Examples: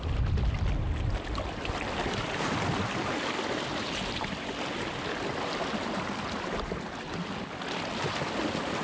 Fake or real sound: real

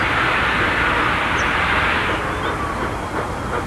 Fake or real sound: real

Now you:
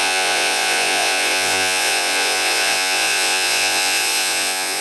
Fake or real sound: fake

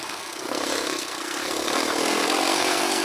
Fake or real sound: fake